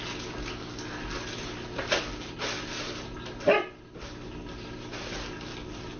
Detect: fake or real real